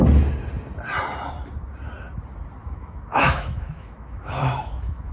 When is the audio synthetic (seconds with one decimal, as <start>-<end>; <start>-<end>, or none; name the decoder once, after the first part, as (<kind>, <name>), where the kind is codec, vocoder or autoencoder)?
2.6-5.1 (autoencoder, DAC-VAE)